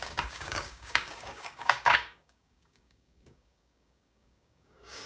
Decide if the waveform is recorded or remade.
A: remade